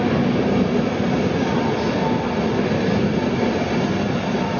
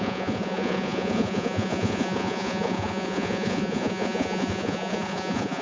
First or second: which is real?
first